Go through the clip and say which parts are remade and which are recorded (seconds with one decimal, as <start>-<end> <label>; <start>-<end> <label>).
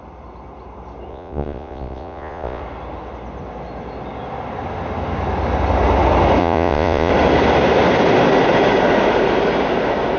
0.0-1.1 recorded; 1.1-2.6 remade; 2.6-6.4 recorded; 6.4-7.1 remade; 7.1-10.2 recorded